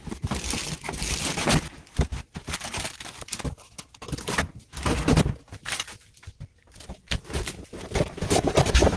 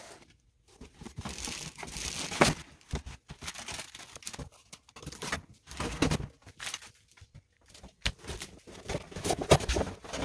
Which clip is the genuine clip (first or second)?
second